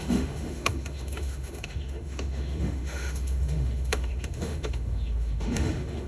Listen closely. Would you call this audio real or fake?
fake